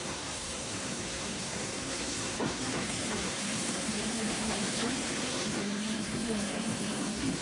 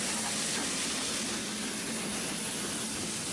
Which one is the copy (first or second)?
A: first